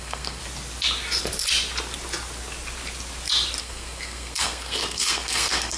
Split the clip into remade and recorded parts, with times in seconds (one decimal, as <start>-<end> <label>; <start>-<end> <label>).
0.0-0.4 remade; 0.4-3.6 recorded; 3.6-5.8 remade